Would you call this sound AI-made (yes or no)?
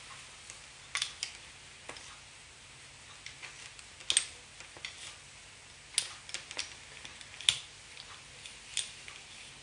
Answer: no